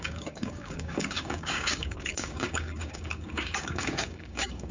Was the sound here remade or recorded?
remade